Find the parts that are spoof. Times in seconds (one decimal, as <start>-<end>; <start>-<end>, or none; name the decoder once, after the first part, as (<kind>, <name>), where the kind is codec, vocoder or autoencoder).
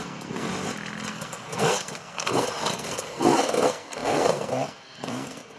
0.0-0.5 (codec, SNAC); 1.1-5.6